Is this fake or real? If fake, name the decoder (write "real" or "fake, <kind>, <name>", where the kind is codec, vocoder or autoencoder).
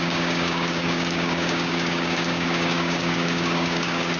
fake, codec, DAC